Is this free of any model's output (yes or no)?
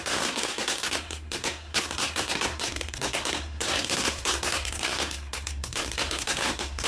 no